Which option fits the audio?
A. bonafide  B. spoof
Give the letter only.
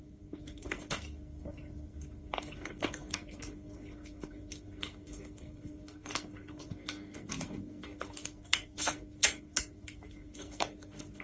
B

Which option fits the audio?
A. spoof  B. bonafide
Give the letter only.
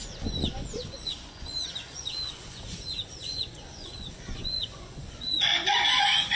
A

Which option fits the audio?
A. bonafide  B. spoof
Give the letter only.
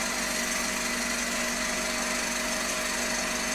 A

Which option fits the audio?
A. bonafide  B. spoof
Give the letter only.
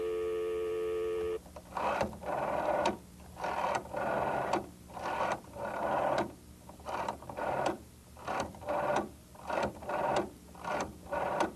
B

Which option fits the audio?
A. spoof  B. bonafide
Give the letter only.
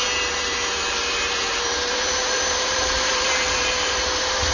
A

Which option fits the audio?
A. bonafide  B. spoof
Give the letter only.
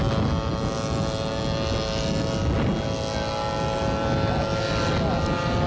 A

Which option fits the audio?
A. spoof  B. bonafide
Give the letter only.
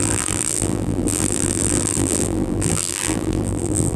A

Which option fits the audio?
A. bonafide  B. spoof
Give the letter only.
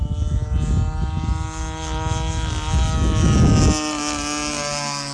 A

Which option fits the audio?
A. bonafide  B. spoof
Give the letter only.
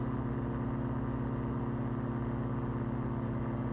A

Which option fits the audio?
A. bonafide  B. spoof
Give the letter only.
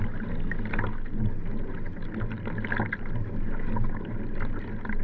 A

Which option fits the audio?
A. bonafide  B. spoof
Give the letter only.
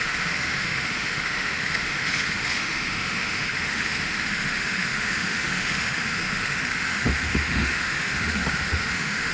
B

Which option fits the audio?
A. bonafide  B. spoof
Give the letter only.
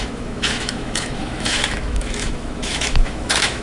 B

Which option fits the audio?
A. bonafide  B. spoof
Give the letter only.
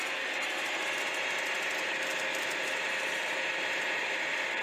A